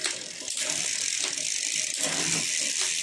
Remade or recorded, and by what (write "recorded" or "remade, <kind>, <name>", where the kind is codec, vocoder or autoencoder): remade, vocoder, BigVGAN v2